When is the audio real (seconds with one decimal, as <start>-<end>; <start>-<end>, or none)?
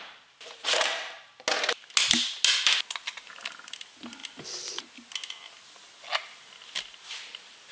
0.0-7.7